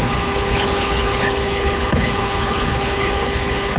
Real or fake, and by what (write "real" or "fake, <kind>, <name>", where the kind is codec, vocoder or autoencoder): fake, codec, HILCodec